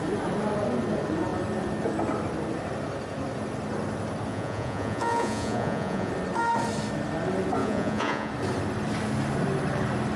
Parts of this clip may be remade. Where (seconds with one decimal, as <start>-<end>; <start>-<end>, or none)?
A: 4.3-6.1; 7.6-8.3